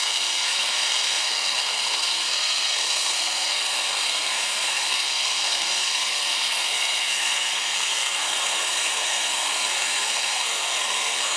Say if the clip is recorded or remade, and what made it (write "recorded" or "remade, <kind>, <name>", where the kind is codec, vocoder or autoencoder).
remade, codec, SNAC